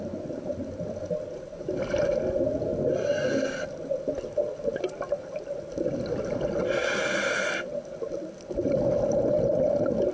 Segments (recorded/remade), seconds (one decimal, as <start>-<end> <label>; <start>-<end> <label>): 0.0-10.1 recorded